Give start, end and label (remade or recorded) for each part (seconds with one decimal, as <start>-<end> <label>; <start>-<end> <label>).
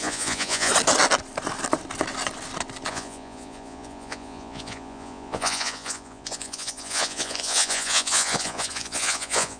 0.0-0.7 remade; 0.7-2.9 recorded; 2.9-9.6 remade